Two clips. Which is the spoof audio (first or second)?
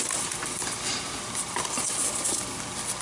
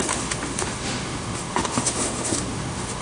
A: second